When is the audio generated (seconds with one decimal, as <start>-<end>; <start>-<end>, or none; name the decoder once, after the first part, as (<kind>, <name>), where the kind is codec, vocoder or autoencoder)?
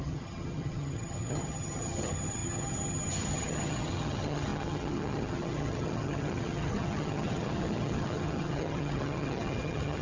0.0-10.0 (vocoder, HiFi-GAN)